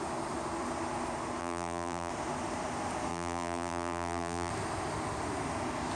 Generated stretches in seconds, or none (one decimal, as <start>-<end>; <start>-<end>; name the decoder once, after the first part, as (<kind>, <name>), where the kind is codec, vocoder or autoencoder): 1.4-2.1 (vocoder, BigVGAN v2); 3.1-4.5